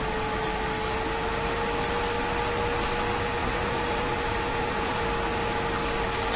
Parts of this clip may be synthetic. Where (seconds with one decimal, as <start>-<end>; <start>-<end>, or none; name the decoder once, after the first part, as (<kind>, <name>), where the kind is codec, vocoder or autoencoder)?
3.4-5.0 (vocoder, BigVGAN v2)